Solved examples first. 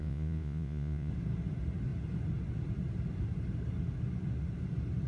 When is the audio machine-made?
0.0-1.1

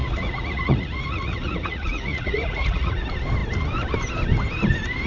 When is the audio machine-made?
0.0-3.0